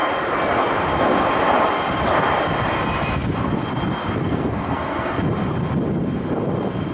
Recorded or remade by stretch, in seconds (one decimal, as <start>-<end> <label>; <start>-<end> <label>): 0.0-4.2 recorded; 4.2-5.2 remade; 5.2-6.9 recorded